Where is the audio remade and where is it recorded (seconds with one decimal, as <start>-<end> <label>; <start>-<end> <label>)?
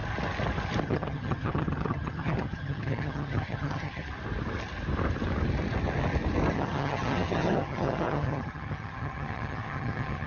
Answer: 0.0-0.8 recorded; 0.8-4.0 remade; 4.0-6.5 recorded; 6.5-10.3 remade